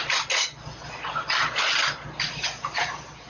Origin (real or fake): real